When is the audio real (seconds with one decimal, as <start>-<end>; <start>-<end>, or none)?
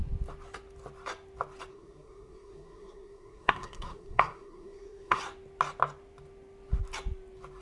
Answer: 0.0-1.7; 5.2-7.6